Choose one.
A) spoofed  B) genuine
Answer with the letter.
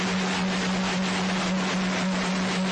B